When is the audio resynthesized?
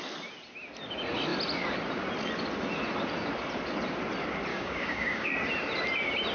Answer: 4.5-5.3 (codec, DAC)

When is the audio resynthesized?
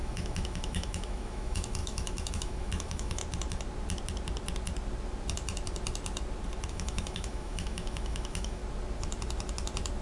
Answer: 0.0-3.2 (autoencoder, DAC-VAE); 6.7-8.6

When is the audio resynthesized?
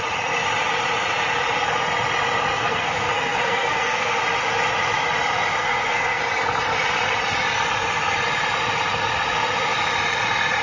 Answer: 2.5-4.2 (codec, SNAC); 5.6-6.2